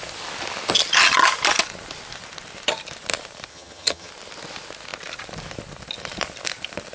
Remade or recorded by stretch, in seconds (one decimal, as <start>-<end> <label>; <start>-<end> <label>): 0.0-3.5 recorded; 3.5-4.1 remade; 4.1-6.9 recorded